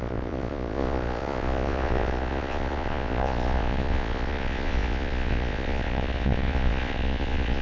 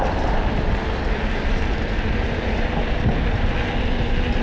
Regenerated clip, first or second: first